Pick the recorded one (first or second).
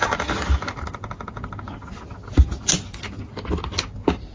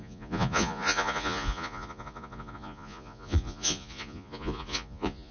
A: first